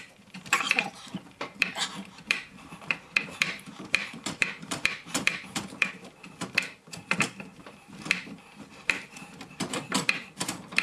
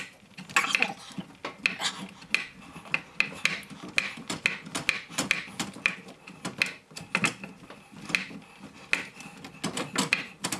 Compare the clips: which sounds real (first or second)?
second